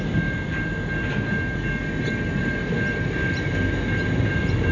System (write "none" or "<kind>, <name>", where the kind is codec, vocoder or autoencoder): none